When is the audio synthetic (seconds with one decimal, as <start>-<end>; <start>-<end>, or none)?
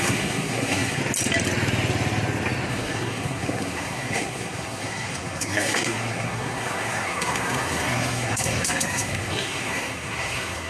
0.0-1.0; 2.7-10.7